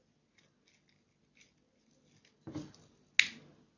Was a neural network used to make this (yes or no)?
no